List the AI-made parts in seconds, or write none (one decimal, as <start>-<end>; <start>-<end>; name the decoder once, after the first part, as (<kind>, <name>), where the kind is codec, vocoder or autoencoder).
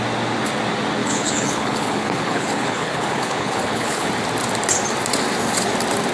1.0-4.1 (codec, HILCodec)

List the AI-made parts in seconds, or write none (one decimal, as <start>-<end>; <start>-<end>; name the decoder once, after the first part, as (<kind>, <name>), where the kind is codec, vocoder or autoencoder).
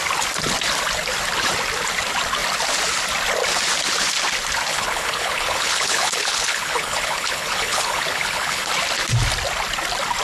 4.7-8.7 (codec, HILCodec)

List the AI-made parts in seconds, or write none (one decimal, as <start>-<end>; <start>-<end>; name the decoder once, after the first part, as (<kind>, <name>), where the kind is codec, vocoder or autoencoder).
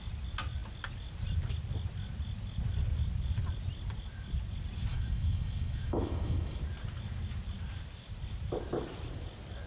4.9-6.6 (autoencoder, DAC-VAE)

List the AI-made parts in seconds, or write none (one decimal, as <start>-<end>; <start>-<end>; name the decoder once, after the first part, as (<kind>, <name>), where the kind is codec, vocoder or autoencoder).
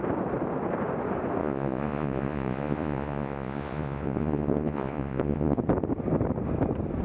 1.4-5.6 (vocoder, Vocos)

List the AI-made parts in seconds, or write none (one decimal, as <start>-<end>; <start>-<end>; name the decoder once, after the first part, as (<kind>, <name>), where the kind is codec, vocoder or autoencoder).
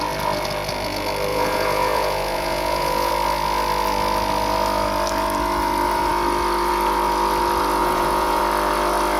1.3-3.1 (vocoder, Vocos); 7.8-8.4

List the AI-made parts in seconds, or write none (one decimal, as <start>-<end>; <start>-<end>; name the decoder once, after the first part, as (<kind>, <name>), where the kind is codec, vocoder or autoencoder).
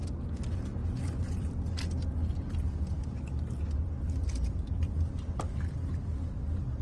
none